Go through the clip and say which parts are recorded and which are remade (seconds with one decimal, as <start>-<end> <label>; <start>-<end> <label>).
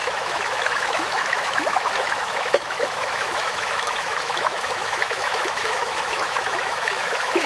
0.0-7.5 remade